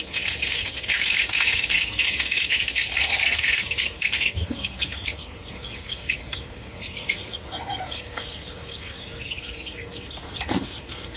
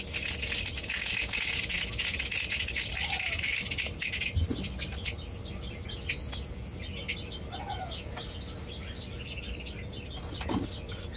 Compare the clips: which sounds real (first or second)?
second